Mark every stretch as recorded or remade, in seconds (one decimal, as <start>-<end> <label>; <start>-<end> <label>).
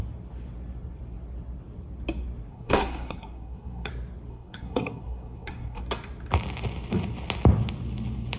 0.0-2.5 recorded; 2.5-3.9 remade; 3.9-4.3 recorded; 4.3-5.8 remade; 5.8-8.4 recorded